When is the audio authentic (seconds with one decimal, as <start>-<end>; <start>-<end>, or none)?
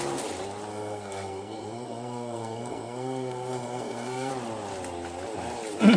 0.0-0.7; 4.3-6.0